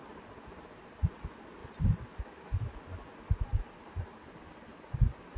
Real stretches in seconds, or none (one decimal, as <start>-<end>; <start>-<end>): 0.0-5.4